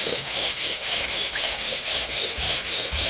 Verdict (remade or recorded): remade